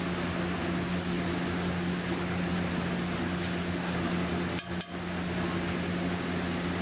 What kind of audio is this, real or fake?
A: real